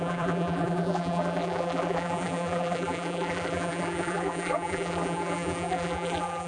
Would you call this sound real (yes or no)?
no